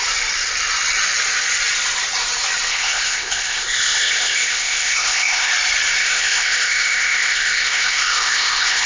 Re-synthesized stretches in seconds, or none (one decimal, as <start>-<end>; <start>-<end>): 2.7-5.5; 6.0-8.9

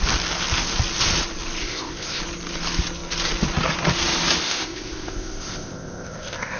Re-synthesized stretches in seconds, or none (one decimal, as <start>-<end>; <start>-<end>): 1.6-2.2; 4.4-6.6